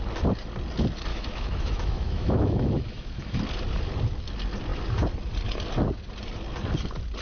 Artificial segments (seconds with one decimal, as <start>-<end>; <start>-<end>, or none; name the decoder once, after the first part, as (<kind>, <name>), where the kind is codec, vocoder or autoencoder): 1.1-3.4 (autoencoder, DAC-VAE)